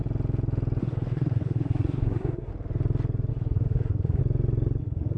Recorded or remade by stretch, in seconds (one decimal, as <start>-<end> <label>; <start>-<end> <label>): 0.0-0.8 recorded; 0.8-2.5 remade; 2.5-3.3 recorded; 3.3-4.2 remade; 4.2-4.8 recorded; 4.8-5.2 remade